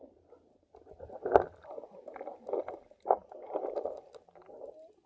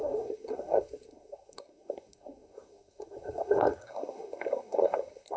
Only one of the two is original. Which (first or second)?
first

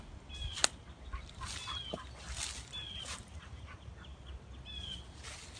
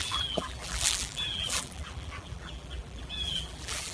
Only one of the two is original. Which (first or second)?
first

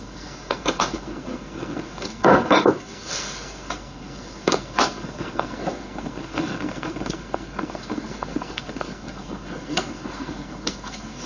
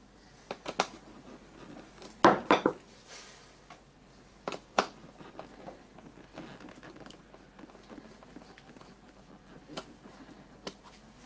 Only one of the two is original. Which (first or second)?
second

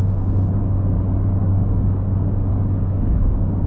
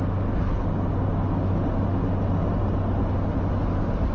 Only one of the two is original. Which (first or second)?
second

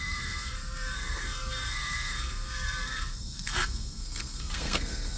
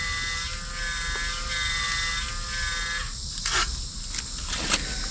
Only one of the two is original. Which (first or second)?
second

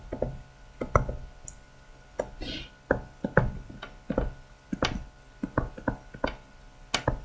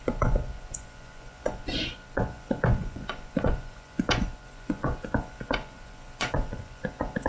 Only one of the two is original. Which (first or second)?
first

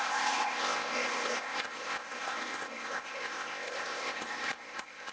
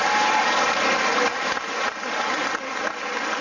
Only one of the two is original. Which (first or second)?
second